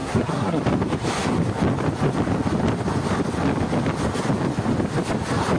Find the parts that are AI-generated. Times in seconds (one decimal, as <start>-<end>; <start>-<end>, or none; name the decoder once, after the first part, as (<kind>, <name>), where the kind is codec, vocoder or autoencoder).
0.0-0.6 (codec, SNAC)

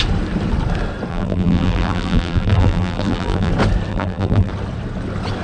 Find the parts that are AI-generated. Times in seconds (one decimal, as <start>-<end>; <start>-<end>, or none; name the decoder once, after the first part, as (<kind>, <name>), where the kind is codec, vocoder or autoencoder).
1.1-3.5 (vocoder, BigVGAN v2); 3.9-4.5

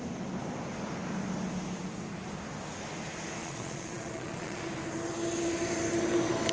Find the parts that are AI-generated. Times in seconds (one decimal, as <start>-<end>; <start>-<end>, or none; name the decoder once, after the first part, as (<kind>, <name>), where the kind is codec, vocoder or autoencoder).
3.4-4.6 (vocoder, Vocos)

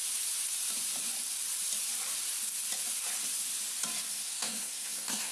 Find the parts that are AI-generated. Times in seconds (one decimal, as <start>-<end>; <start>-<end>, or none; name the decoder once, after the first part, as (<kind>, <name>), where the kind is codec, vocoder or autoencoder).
4.1-5.3 (codec, SNAC)

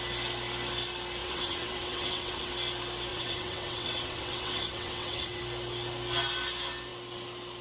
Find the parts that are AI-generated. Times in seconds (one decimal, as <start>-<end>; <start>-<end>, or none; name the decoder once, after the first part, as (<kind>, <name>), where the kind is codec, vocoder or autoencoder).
1.2-2.5 (vocoder, WaveNeXt); 3.1-5.4